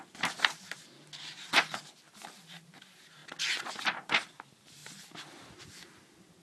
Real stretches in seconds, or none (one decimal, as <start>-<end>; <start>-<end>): 0.0-6.4